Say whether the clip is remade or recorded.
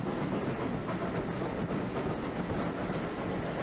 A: recorded